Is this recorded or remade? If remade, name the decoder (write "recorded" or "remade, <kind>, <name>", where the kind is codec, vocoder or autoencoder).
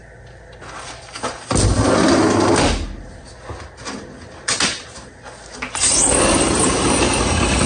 recorded